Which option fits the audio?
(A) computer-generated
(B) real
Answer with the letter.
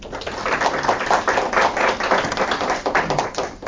B